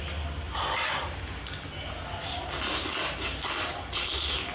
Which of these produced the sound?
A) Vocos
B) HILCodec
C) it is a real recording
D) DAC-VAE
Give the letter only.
C